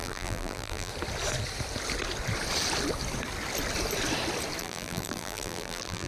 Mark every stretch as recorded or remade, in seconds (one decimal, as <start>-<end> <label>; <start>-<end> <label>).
0.0-0.9 remade; 0.9-4.6 recorded; 4.6-6.1 remade